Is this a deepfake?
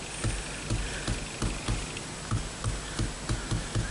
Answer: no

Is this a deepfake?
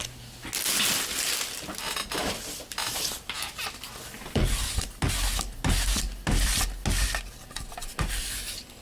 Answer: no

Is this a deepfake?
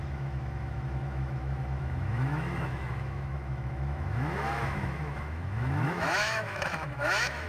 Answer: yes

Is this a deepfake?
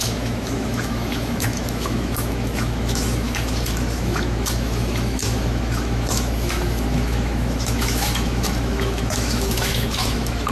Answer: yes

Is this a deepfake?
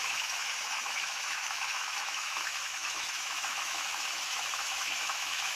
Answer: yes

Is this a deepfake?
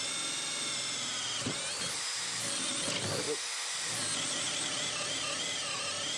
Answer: no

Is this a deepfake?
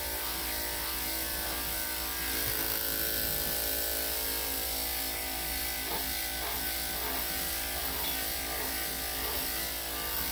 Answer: no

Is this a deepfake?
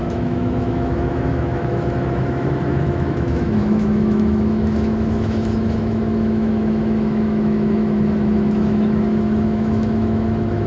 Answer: yes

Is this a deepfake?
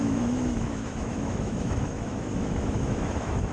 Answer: yes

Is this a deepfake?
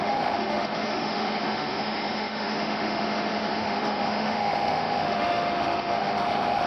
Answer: yes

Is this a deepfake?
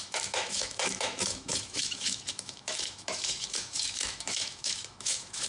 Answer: yes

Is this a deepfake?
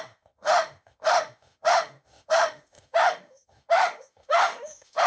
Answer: yes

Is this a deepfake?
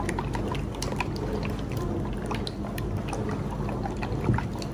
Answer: no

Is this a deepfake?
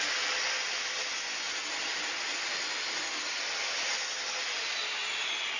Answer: no